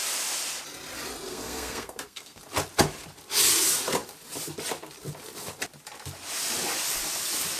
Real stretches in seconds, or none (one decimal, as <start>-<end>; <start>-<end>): 0.0-1.3; 2.4-7.6